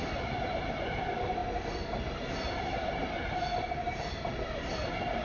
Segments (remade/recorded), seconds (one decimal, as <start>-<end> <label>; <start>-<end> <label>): 0.0-5.2 recorded